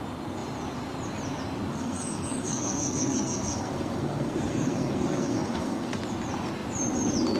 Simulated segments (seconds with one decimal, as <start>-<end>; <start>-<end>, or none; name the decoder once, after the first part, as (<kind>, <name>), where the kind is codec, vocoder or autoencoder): 1.7-6.0 (codec, SNAC)